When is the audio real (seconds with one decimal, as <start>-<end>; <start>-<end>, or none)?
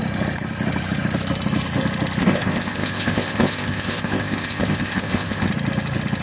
0.0-2.2; 5.5-6.2